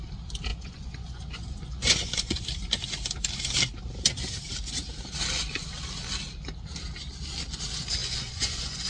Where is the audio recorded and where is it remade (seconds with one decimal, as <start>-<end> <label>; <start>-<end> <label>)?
0.0-0.5 recorded; 0.5-2.4 remade; 2.4-8.0 recorded; 8.0-8.9 remade